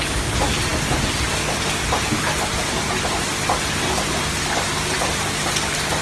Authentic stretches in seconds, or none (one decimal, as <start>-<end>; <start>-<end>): 0.0-6.0